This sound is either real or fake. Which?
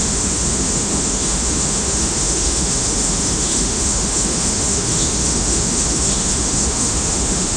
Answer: fake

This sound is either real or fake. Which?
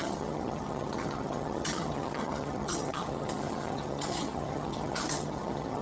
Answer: fake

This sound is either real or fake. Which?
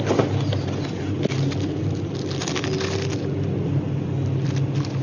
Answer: real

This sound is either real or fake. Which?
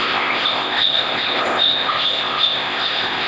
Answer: fake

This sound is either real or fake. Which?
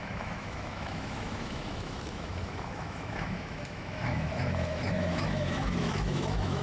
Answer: fake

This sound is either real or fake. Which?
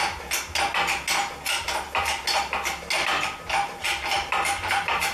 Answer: real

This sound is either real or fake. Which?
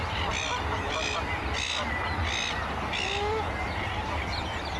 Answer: real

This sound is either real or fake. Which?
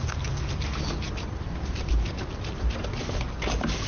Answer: real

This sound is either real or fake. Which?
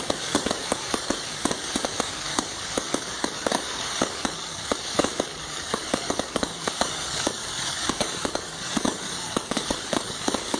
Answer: fake